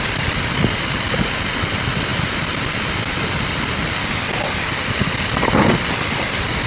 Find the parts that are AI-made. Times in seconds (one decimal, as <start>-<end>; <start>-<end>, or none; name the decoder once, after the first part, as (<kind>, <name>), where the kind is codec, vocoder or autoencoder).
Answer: none